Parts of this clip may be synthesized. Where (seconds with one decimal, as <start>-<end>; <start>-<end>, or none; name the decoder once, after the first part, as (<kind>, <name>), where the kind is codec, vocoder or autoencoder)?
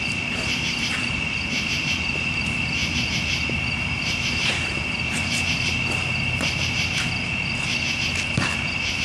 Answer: 0.0-2.8 (vocoder, BigVGAN v2); 8.0-9.0